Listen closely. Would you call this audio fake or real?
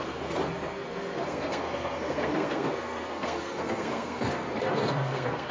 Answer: fake